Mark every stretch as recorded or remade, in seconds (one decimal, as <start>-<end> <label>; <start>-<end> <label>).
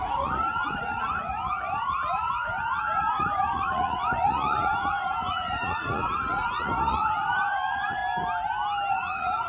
0.0-8.0 remade; 8.0-8.9 recorded; 8.9-9.5 remade